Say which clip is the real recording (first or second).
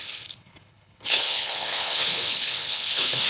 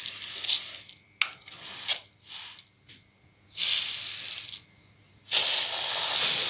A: second